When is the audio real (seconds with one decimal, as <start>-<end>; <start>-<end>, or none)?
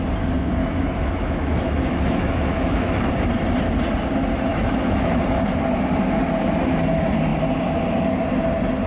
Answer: 0.0-0.6; 3.1-4.5; 5.2-8.9